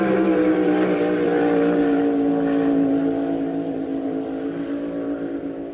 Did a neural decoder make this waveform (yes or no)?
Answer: no